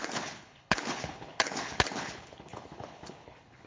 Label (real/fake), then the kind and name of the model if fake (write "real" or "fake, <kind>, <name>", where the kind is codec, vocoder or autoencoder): fake, codec, HILCodec